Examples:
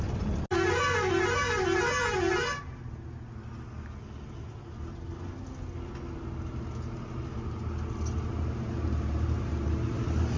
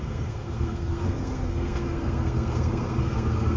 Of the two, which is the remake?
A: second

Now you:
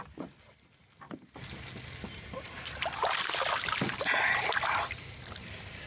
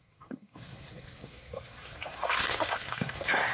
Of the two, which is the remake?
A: second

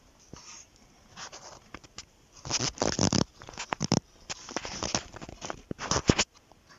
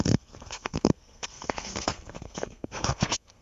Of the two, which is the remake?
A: second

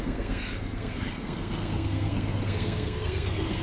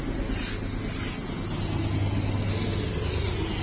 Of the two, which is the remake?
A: first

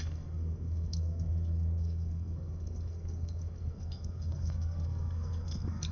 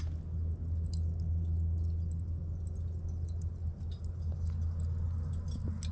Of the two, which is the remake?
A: first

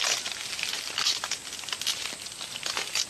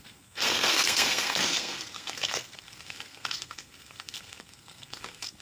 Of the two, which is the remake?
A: second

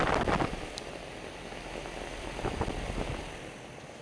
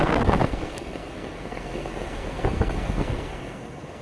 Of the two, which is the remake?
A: second